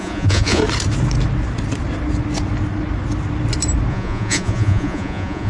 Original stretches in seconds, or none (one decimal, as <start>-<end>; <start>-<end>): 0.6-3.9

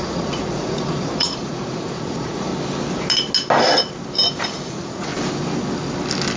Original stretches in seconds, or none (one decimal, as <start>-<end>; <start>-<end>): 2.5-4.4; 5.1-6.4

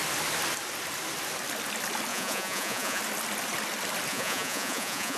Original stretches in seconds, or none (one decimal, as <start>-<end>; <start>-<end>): 0.0-2.1; 3.0-4.1